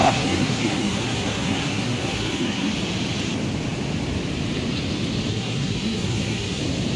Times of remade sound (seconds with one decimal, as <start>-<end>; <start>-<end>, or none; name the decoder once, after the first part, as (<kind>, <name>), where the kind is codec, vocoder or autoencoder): 0.0-2.7 (codec, SNAC); 5.3-6.6